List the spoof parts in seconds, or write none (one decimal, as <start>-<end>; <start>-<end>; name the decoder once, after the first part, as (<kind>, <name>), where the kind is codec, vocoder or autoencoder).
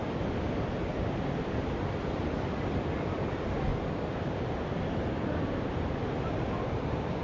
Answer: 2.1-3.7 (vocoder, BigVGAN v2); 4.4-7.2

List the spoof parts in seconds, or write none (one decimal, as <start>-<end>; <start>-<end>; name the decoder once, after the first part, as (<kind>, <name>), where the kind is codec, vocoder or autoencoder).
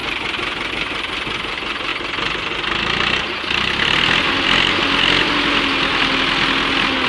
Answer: none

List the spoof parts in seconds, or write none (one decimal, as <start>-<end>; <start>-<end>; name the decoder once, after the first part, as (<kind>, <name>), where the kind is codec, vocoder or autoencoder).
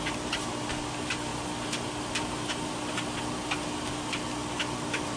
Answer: none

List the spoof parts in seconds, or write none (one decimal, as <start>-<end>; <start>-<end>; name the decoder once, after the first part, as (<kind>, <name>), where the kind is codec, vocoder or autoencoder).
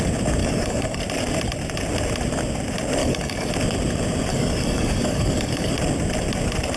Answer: 0.4-1.0 (codec, DAC); 3.0-3.5; 4.3-5.7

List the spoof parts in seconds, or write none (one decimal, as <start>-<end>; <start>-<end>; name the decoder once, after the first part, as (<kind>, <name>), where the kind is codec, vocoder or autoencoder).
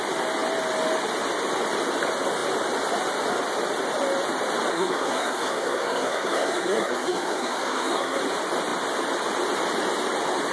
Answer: 4.7-8.2 (codec, SNAC)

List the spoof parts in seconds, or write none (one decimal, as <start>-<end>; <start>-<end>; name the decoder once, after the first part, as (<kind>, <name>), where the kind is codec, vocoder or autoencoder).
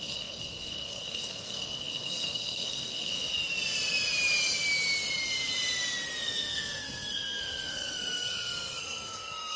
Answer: 0.0-3.1 (codec, SNAC); 6.2-9.6